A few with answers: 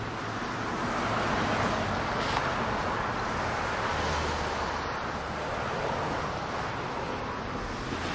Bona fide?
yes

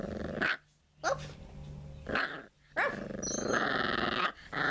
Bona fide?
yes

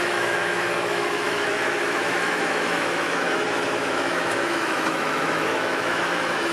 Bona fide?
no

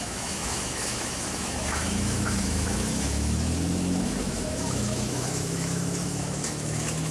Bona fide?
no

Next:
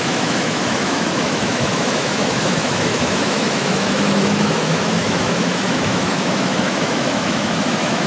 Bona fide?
no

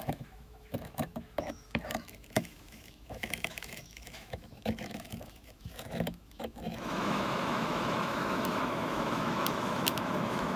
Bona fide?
no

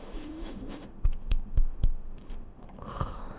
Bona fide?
no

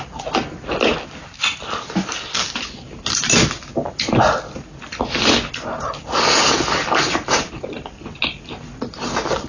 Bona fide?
yes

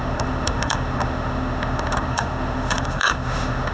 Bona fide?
no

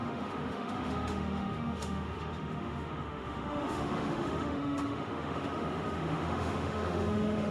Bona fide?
no